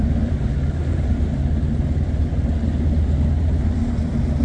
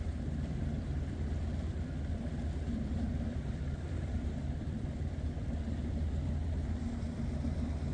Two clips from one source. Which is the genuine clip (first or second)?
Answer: first